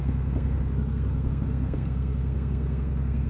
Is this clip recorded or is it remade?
remade